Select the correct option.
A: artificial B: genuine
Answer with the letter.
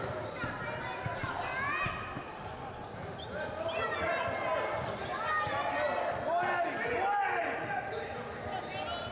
B